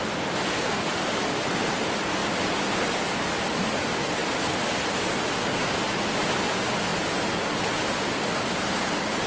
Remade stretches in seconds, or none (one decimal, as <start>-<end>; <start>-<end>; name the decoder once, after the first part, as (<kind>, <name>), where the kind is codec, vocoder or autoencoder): none